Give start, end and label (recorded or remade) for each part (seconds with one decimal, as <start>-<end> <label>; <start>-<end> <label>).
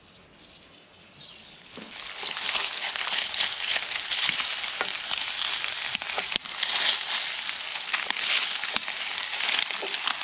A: 0.0-1.4 recorded; 1.4-4.4 remade; 4.4-7.7 recorded; 7.7-8.7 remade; 8.7-10.2 recorded